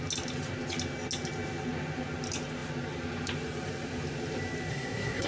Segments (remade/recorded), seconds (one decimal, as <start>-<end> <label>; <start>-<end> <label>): 0.0-4.7 recorded; 4.7-5.3 remade